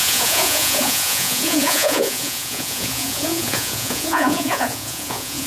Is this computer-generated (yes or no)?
yes